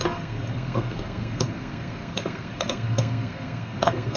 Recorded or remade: remade